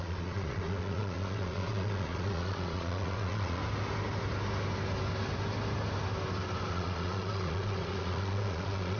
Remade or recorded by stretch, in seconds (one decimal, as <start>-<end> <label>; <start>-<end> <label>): 0.0-3.6 remade; 3.6-6.7 recorded; 6.7-9.0 remade